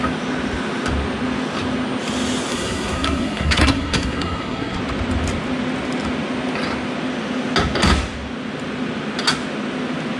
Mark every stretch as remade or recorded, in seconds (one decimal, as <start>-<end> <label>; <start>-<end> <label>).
0.0-2.5 recorded; 2.5-4.8 remade; 4.8-10.2 recorded